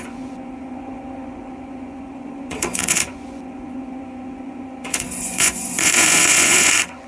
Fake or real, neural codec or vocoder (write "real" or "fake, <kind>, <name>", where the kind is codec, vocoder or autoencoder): fake, vocoder, Vocos